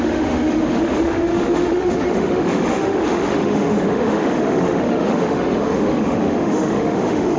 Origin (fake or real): fake